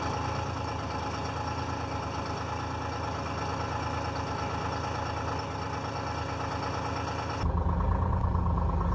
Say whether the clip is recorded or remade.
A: recorded